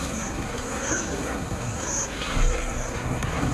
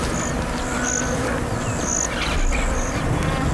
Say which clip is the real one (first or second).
second